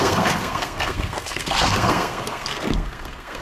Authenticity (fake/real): fake